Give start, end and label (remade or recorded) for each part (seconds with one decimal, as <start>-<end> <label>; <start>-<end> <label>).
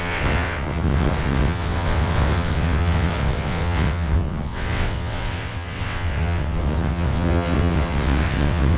0.0-8.8 remade